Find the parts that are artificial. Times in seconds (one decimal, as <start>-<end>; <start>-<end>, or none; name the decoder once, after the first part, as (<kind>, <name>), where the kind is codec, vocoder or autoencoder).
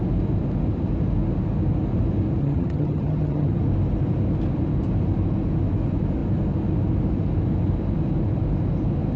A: 2.4-3.6 (vocoder, HiFi-GAN)